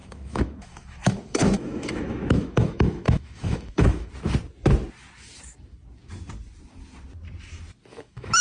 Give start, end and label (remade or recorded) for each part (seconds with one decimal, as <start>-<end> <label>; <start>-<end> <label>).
0.0-4.1 remade; 4.1-7.9 recorded; 7.9-8.4 remade

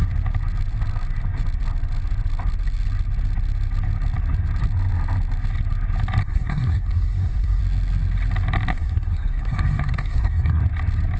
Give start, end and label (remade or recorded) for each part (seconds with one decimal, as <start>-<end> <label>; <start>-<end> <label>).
0.0-6.2 recorded; 6.2-7.6 remade; 7.6-8.7 recorded; 8.7-10.6 remade; 10.6-11.2 recorded

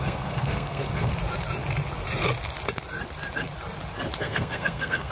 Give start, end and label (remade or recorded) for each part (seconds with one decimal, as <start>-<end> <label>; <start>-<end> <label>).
0.0-1.1 remade; 1.1-4.2 recorded; 4.2-5.1 remade

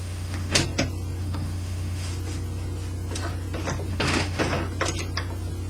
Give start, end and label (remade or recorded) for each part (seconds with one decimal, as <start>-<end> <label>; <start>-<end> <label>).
0.0-0.6 remade; 0.6-1.2 recorded; 1.2-2.1 remade; 2.1-3.9 recorded; 3.9-4.4 remade; 4.4-5.7 recorded

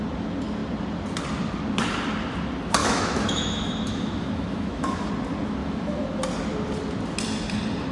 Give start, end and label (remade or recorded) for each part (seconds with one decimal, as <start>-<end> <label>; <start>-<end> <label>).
0.0-2.8 recorded; 2.8-5.1 remade; 5.1-5.6 recorded; 5.6-6.2 remade; 6.2-7.9 recorded

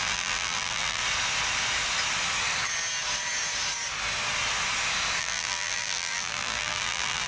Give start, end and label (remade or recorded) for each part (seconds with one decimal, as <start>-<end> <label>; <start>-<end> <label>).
0.0-1.0 remade; 1.0-5.2 recorded; 5.2-7.3 remade

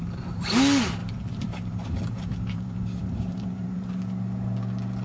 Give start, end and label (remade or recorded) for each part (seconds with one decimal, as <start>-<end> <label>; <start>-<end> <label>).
0.0-1.0 recorded; 1.0-3.9 remade; 3.9-5.0 recorded

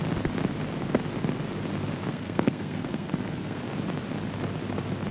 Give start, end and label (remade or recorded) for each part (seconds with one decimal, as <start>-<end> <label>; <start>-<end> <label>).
0.0-2.1 recorded; 2.1-3.6 remade; 3.6-5.1 recorded